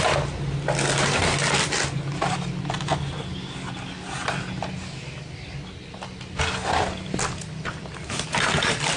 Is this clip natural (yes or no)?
yes